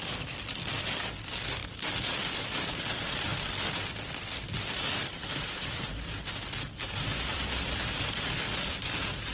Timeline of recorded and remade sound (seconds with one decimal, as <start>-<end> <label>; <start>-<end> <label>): 0.0-7.3 recorded; 7.3-8.7 remade; 8.7-9.3 recorded